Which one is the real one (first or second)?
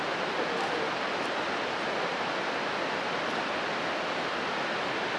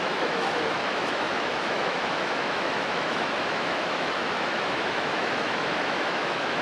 first